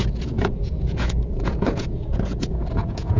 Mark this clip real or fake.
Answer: fake